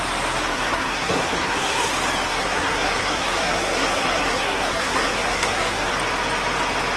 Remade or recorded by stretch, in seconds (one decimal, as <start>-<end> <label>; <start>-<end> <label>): 0.0-0.5 recorded; 0.5-1.9 remade; 1.9-2.3 recorded; 2.3-5.9 remade; 5.9-7.0 recorded